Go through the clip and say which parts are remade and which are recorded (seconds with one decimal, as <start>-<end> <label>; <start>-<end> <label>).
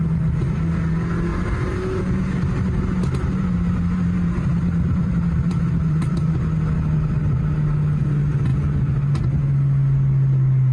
0.0-1.3 recorded; 1.3-6.3 remade; 6.3-10.7 recorded